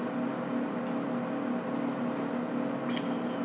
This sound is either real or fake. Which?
real